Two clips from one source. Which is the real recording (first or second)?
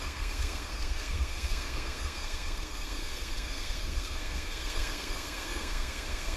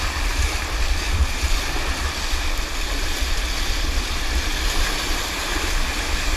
second